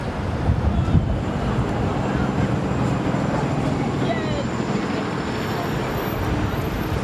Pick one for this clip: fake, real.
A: real